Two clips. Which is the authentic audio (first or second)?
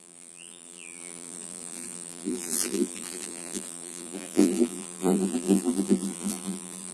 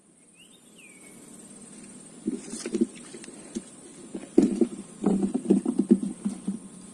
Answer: second